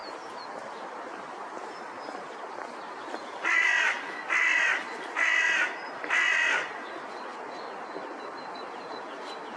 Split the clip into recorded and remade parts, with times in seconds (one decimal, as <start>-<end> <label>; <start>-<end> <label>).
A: 0.0-9.6 recorded